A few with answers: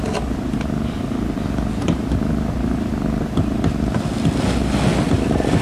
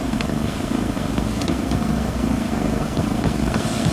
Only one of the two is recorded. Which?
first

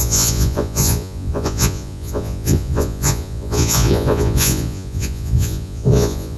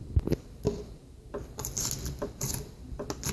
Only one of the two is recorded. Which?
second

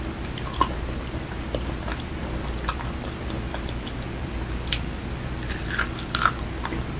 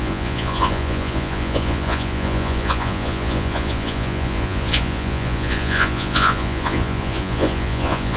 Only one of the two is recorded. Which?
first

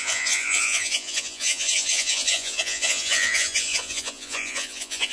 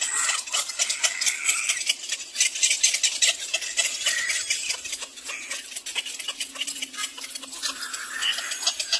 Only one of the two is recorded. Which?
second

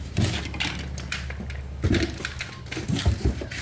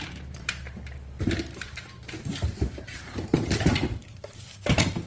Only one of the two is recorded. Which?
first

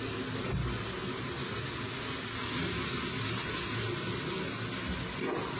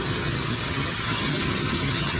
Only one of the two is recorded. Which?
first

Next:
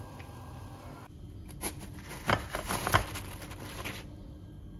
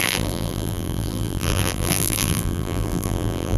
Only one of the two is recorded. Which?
first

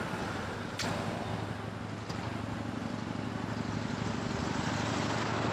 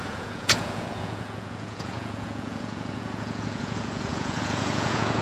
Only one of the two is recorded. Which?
first